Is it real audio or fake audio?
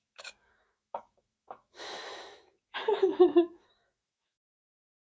fake